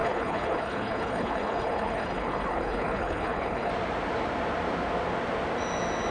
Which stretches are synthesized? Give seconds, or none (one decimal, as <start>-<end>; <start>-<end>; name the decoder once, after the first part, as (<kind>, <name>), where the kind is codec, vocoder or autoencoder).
0.0-3.7 (codec, HILCodec)